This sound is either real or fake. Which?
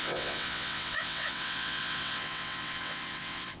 fake